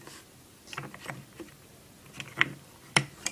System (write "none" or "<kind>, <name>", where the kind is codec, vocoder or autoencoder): vocoder, BigVGAN v2